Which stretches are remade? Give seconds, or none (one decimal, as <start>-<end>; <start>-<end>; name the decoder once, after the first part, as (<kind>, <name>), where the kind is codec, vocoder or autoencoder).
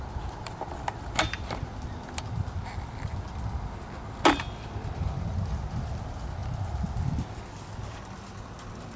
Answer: none